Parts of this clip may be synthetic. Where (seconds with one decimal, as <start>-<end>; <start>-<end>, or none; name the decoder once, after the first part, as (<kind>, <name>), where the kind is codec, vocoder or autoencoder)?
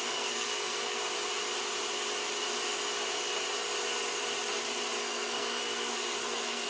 0.0-1.0 (codec, SNAC); 5.0-6.7